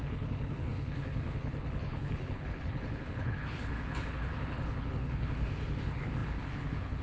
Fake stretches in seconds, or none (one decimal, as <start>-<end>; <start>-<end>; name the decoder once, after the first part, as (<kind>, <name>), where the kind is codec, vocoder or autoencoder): 0.0-7.0 (codec, HILCodec)